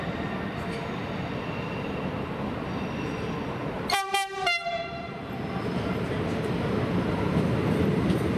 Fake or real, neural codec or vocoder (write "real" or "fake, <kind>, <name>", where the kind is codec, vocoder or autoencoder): real